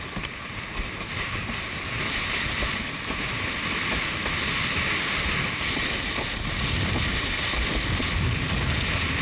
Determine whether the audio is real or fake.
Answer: real